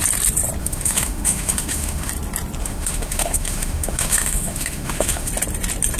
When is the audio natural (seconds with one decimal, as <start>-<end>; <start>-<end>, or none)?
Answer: 0.0-0.6; 2.1-2.6; 5.3-6.0